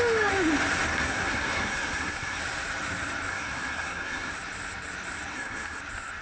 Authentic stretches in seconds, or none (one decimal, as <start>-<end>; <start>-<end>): 0.0-0.9; 2.4-3.3; 4.3-5.3; 5.8-6.2